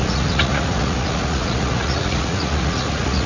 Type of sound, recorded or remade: remade